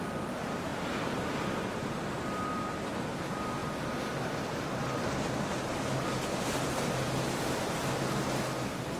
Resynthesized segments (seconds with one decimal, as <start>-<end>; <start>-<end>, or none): 0.7-2.0; 5.7-7.6